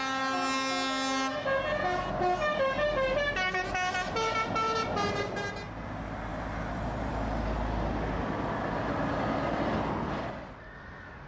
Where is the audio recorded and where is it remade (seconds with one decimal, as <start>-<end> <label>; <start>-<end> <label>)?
0.0-6.3 recorded; 6.3-7.1 remade; 7.1-11.3 recorded